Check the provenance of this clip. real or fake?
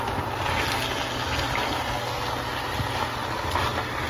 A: real